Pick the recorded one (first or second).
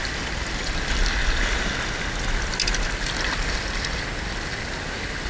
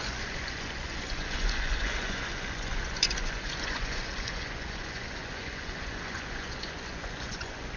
first